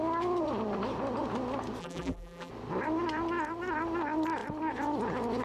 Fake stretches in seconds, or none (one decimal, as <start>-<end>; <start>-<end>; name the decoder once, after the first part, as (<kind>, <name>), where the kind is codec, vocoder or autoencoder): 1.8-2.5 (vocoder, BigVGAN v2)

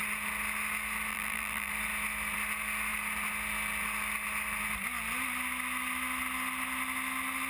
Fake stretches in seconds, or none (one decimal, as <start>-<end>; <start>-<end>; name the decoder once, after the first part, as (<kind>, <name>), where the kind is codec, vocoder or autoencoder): 1.1-1.7 (vocoder, BigVGAN v2)

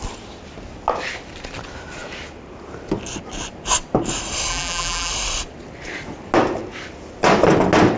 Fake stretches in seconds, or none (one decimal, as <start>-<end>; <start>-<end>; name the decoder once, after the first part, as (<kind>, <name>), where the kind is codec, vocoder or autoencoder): 4.5-5.1 (vocoder, BigVGAN v2)

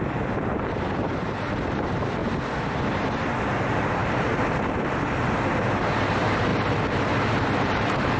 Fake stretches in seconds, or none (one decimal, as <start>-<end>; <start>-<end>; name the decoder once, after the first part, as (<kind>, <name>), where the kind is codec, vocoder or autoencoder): 0.0-2.2 (vocoder, BigVGAN v2); 3.5-6.5; 7.3-8.2